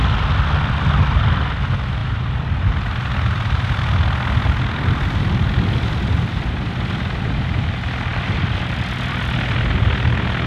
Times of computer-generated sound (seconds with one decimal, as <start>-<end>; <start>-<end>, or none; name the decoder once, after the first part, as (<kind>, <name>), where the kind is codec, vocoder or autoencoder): 2.0-3.1 (vocoder, BigVGAN v2); 8.1-9.2